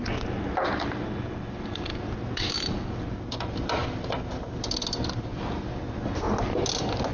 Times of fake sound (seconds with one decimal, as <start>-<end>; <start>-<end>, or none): none

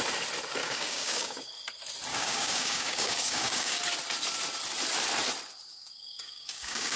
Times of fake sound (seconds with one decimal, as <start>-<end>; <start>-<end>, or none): 0.6-1.5; 2.1-3.8; 5.7-7.0

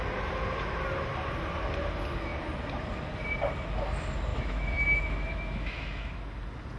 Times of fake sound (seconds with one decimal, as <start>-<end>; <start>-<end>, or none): 4.3-6.1

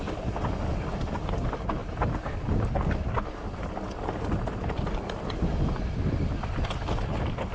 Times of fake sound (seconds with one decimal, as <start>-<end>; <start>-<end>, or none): none

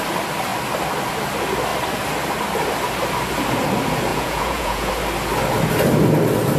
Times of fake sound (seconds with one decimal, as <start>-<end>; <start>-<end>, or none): 4.1-4.9

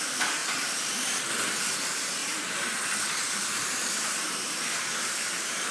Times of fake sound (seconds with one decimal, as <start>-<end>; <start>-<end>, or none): 0.4-1.1; 2.2-5.7